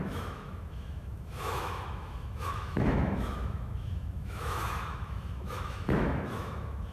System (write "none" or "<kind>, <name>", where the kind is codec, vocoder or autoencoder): autoencoder, DAC-VAE